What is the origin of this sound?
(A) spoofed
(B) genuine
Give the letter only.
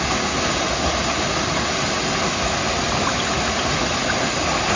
B